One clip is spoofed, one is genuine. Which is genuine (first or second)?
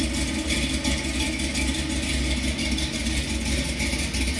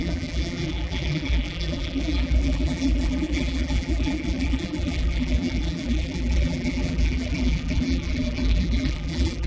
first